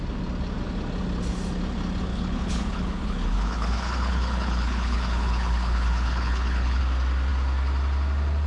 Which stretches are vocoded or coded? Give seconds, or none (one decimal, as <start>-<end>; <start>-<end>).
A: 2.1-6.8